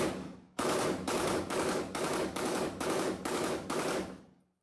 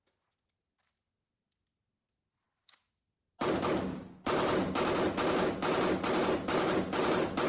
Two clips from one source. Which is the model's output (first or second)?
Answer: first